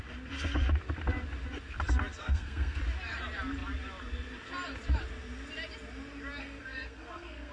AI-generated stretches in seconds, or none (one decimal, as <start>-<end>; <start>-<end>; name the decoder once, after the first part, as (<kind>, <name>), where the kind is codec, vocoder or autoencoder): 2.2-2.8 (codec, SNAC); 6.4-7.5